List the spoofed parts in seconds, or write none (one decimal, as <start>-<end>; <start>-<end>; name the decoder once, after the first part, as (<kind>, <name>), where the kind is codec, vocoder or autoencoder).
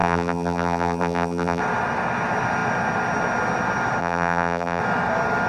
0.0-1.6 (vocoder, BigVGAN v2); 4.0-4.8